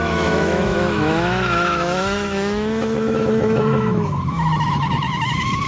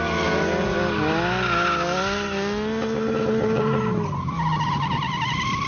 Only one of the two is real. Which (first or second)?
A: second